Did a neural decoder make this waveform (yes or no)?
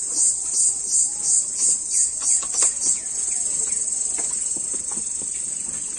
no